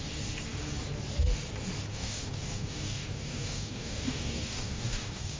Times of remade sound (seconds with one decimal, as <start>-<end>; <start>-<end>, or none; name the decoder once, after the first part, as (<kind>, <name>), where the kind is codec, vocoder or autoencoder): 1.9-5.4 (codec, DAC)